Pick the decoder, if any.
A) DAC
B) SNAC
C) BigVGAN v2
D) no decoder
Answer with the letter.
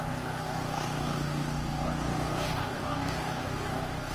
A